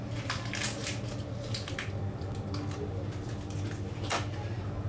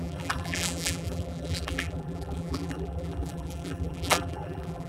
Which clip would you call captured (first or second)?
first